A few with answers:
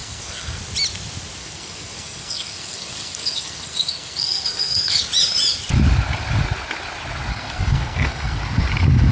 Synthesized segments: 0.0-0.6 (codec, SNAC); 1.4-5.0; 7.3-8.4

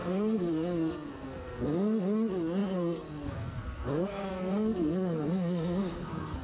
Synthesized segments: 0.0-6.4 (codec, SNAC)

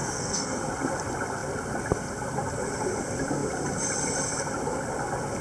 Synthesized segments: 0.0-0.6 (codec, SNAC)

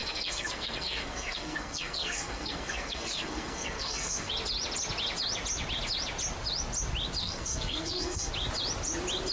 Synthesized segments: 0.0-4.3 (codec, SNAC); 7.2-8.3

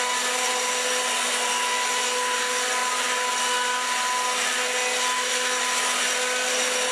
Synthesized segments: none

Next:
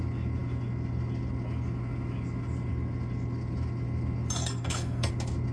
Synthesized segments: 4.4-5.1 (codec, SNAC)